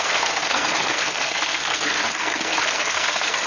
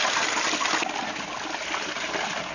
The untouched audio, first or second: second